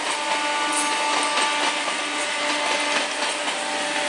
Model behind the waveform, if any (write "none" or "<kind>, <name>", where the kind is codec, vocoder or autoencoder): none